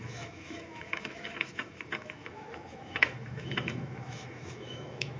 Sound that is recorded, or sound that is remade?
remade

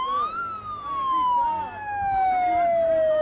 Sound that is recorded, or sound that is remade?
recorded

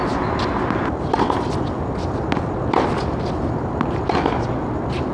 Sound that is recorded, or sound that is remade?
recorded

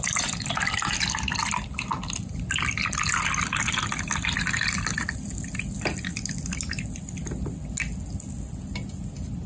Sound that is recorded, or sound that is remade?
recorded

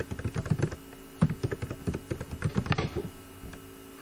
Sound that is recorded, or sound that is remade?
recorded